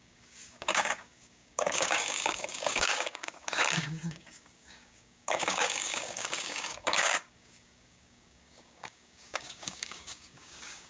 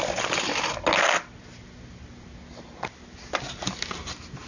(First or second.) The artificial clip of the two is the first